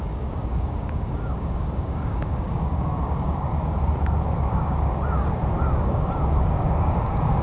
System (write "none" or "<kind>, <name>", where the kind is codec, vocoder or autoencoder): codec, DAC